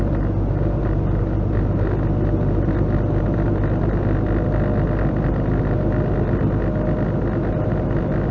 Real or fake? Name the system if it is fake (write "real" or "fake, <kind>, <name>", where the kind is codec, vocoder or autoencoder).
real